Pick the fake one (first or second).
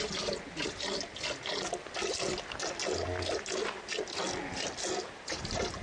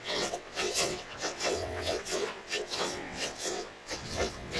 second